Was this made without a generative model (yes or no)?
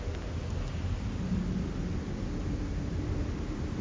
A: yes